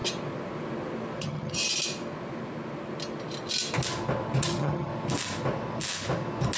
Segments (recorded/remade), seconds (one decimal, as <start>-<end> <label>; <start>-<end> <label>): 0.0-1.2 recorded; 1.2-1.6 remade; 1.6-4.4 recorded; 4.4-4.9 remade; 4.9-6.6 recorded